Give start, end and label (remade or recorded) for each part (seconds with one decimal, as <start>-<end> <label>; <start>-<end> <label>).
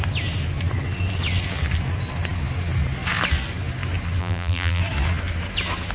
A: 0.0-4.2 recorded; 4.2-4.8 remade; 4.8-5.9 recorded